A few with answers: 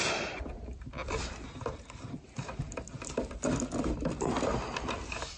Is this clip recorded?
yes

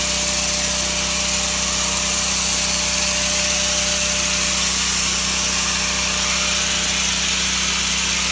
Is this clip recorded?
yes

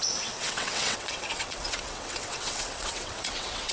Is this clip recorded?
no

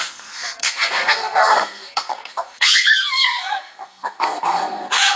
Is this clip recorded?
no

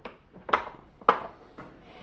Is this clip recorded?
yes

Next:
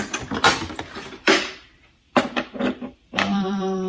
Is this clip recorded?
no